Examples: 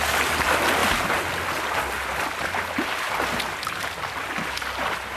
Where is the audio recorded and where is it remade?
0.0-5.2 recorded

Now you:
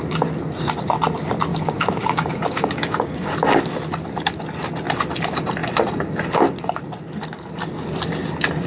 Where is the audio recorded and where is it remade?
0.0-1.5 recorded; 1.5-3.3 remade; 3.3-8.7 recorded

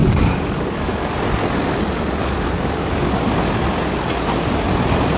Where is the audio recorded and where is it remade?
0.0-1.1 remade; 1.1-2.2 recorded; 2.2-3.3 remade; 3.3-5.2 recorded

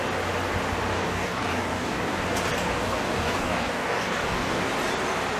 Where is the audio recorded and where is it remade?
0.0-0.9 recorded; 0.9-2.2 remade; 2.2-2.7 recorded; 2.7-4.7 remade; 4.7-5.4 recorded

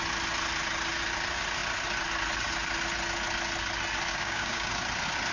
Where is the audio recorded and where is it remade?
0.0-4.1 recorded; 4.1-4.7 remade; 4.7-5.3 recorded

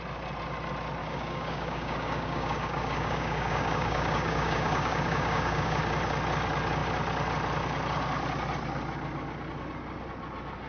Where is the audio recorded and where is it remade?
0.0-1.0 recorded; 1.0-5.8 remade; 5.8-10.7 recorded